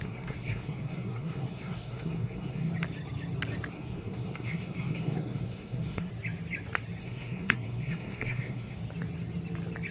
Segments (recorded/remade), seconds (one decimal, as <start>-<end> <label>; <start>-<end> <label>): 0.0-2.7 remade; 2.7-3.7 recorded; 3.7-6.1 remade; 6.1-7.0 recorded; 7.0-8.8 remade; 8.8-9.9 recorded